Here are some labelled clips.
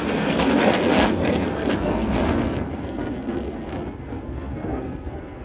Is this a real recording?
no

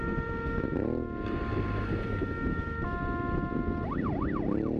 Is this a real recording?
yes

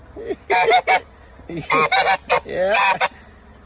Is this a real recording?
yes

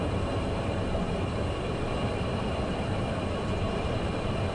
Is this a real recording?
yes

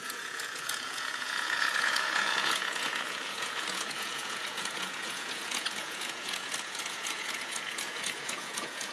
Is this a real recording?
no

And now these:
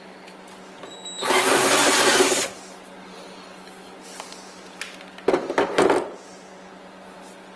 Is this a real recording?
yes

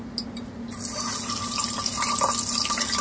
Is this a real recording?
yes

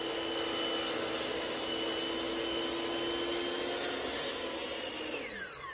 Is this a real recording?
yes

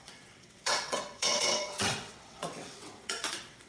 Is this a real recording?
no